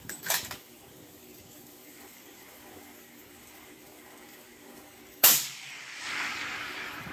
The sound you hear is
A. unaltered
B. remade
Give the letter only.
B